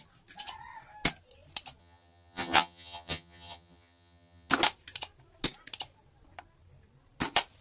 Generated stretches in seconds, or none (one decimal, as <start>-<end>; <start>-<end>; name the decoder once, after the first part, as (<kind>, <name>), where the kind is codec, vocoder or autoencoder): 1.8-4.5 (vocoder, HiFi-GAN)